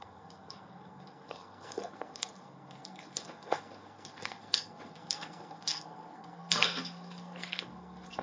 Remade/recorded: remade